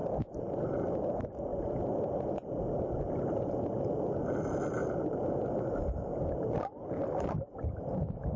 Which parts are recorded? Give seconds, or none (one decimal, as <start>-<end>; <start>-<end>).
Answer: 0.0-8.4